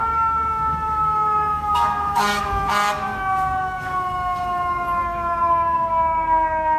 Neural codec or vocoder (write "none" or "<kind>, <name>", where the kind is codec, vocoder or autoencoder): codec, DAC